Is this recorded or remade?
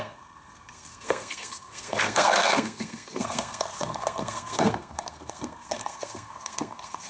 remade